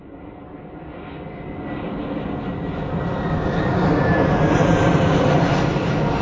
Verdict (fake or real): real